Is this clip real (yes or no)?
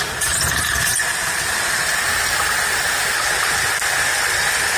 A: yes